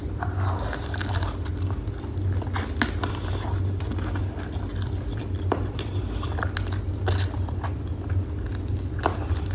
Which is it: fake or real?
real